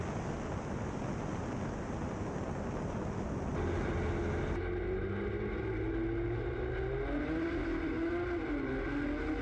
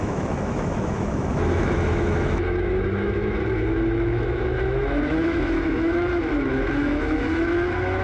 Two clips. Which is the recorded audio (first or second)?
first